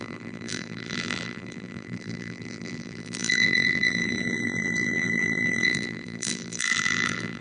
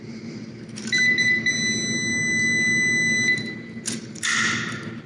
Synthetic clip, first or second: first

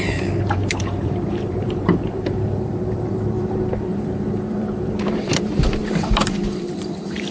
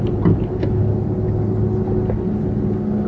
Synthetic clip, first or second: first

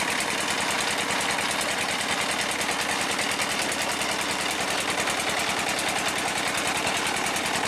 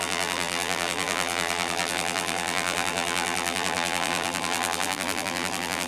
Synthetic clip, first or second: second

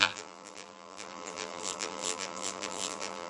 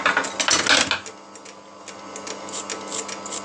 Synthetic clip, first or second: first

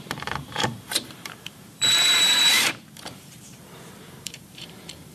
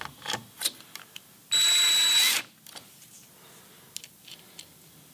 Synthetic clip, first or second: first